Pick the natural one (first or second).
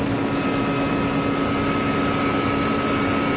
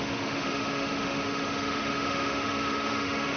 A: first